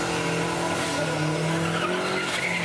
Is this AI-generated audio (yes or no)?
no